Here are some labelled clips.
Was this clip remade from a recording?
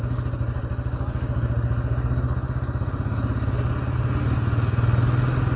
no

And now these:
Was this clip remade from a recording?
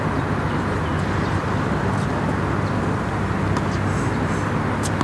no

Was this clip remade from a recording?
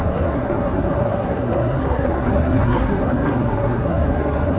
yes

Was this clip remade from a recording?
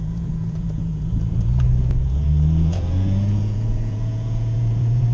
yes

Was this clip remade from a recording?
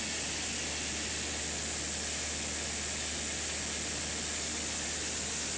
no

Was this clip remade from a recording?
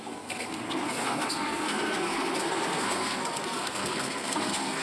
yes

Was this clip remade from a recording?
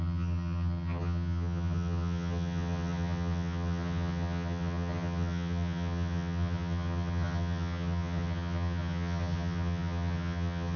yes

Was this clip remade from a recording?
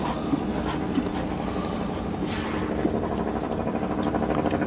no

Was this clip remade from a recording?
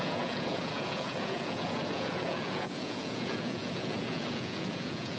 yes